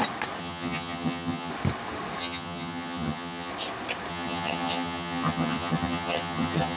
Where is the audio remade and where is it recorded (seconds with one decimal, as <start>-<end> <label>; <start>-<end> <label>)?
0.0-0.4 recorded; 0.4-1.5 remade; 1.5-2.2 recorded; 2.2-3.5 remade; 3.5-4.1 recorded; 4.1-6.8 remade